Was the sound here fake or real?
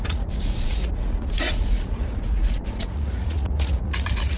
fake